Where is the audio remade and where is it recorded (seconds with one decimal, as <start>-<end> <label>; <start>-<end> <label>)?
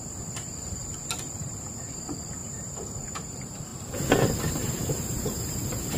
0.0-3.7 remade; 3.7-4.4 recorded; 4.4-6.0 remade